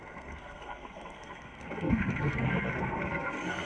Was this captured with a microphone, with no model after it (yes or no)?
no